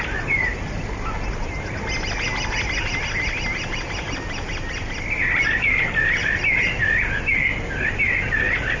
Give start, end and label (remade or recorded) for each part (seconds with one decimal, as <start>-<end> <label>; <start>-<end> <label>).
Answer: 0.0-0.5 remade; 0.5-5.6 recorded; 5.6-6.2 remade; 6.2-8.0 recorded; 8.0-8.8 remade